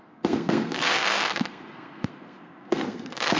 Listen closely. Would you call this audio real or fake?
fake